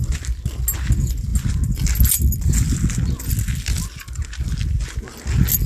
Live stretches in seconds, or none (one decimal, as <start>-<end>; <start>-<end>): 0.0-5.7